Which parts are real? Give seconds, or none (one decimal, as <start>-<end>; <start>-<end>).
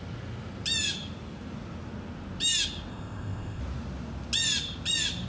0.0-2.9; 3.6-5.3